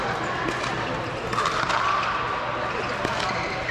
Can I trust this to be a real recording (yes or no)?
yes